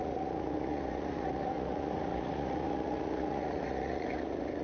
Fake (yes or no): yes